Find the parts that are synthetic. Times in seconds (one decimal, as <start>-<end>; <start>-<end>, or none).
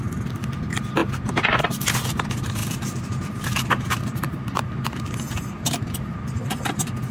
2.6-7.1